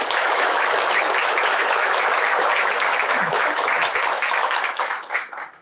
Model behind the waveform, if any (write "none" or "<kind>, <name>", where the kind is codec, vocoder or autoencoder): autoencoder, DAC-VAE